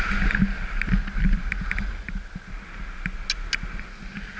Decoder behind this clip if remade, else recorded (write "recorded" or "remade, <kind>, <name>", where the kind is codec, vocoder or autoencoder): recorded